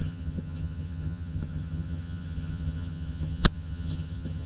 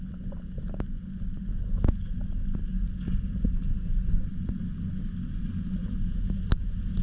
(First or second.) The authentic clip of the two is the second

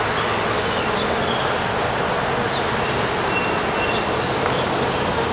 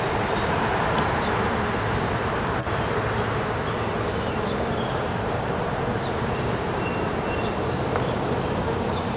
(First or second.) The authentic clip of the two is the first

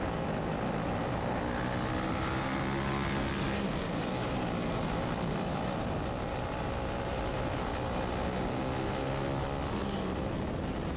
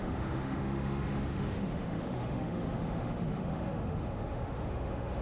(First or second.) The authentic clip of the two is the first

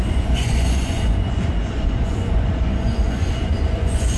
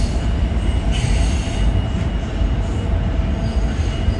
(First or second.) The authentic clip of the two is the second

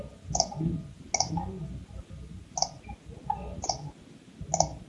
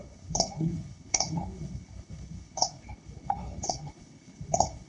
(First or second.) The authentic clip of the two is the first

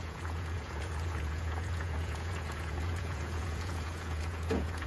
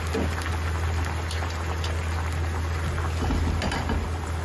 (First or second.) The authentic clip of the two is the second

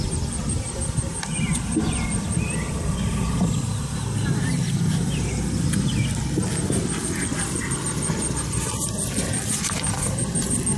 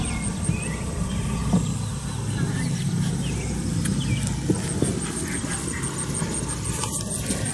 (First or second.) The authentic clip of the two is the second